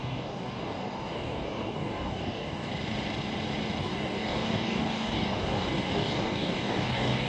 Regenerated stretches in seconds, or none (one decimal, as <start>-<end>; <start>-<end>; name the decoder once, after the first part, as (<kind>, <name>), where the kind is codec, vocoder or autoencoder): 0.0-2.7 (codec, DAC); 3.8-7.3